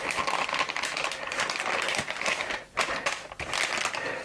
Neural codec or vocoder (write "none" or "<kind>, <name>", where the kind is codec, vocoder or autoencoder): none